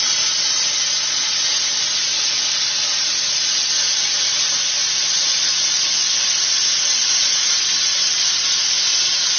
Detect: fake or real real